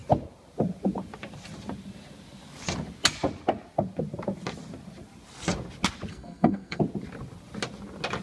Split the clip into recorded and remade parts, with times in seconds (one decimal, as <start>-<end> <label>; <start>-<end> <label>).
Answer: 0.0-6.1 recorded; 6.1-6.8 remade; 6.8-8.2 recorded